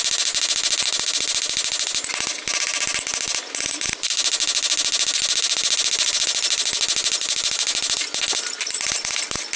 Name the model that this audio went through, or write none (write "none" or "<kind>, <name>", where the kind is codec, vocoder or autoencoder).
none